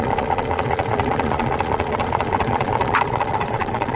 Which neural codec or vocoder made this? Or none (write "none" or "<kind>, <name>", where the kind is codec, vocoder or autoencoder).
vocoder, Vocos